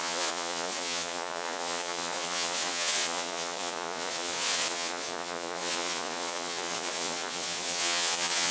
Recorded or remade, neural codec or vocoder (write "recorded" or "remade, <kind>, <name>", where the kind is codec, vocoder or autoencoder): remade, vocoder, Vocos